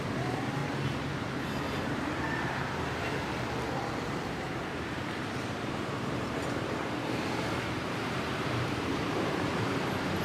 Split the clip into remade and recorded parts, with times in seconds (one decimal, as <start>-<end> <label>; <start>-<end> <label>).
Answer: 0.0-0.6 remade; 0.6-1.2 recorded; 1.2-10.2 remade